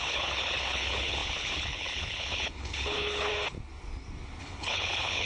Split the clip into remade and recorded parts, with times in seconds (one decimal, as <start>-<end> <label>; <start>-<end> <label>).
0.0-3.3 remade; 3.3-4.4 recorded; 4.4-5.3 remade